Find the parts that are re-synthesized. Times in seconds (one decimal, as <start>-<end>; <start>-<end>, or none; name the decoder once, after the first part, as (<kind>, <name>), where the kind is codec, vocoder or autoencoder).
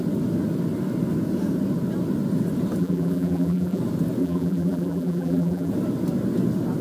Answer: 2.8-3.8 (vocoder, BigVGAN v2); 4.2-5.7